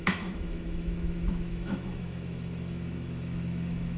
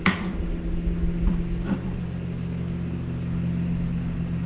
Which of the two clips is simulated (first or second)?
first